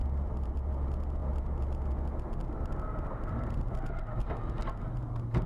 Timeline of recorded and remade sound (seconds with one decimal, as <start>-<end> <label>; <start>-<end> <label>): 0.0-0.7 remade; 0.7-5.5 recorded